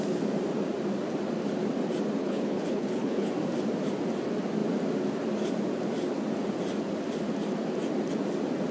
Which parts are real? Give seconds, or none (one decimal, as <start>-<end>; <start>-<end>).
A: 0.0-2.2; 3.3-8.7